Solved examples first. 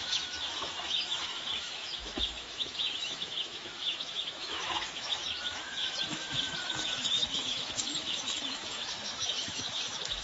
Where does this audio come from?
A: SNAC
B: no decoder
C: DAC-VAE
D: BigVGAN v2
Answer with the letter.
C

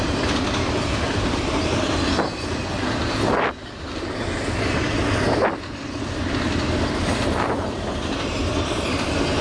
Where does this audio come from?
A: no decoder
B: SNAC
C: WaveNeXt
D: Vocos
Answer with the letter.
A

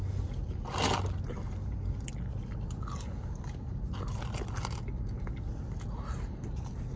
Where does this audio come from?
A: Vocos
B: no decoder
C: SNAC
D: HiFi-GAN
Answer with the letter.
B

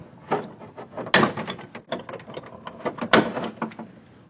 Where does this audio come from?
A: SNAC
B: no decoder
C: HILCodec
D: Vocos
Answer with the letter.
B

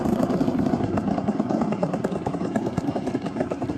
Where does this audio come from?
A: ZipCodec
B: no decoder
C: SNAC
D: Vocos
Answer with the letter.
C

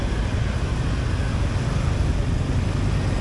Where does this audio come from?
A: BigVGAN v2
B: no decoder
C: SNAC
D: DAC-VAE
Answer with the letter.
B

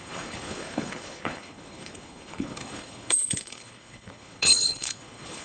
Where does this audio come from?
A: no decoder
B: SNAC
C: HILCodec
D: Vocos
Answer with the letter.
C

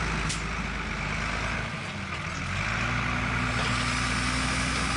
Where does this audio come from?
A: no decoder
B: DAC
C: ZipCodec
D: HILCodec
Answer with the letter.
A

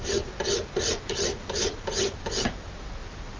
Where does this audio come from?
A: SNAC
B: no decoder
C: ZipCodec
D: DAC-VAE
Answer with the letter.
B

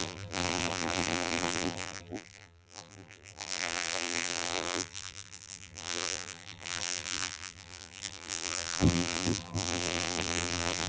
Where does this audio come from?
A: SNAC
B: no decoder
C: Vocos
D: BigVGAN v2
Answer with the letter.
D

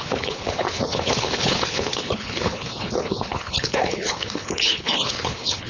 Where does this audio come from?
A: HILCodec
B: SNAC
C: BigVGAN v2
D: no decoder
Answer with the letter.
A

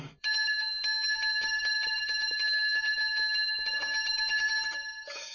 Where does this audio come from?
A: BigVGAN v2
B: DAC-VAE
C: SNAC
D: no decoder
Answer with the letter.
B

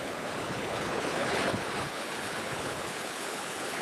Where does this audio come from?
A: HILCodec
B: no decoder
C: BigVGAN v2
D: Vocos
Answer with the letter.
A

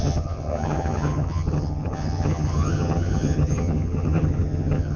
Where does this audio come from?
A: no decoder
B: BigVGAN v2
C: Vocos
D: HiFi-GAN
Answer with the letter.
D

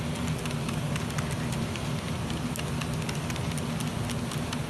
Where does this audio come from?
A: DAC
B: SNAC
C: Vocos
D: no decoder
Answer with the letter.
D